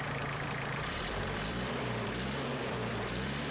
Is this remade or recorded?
remade